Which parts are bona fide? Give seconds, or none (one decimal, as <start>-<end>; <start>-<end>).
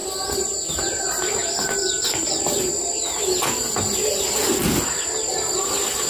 0.0-6.1